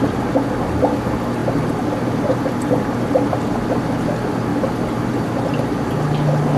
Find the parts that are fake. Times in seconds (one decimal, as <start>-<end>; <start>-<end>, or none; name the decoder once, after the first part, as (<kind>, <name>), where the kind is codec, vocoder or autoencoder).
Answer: 1.4-3.8 (vocoder, BigVGAN v2)